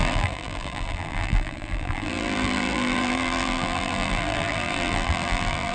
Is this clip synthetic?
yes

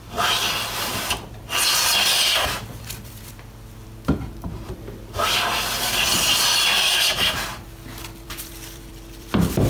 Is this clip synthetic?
yes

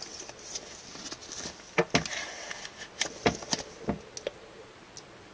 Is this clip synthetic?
no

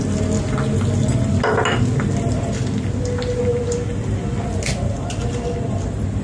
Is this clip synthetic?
no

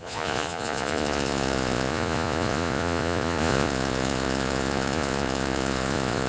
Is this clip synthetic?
yes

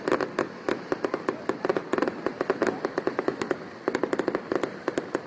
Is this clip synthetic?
no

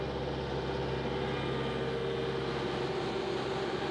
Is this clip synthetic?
no